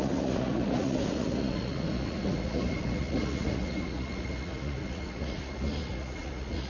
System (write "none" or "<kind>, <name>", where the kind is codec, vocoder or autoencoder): vocoder, Vocos